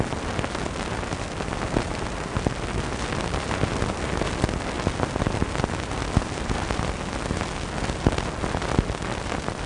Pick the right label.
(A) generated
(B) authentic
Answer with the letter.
B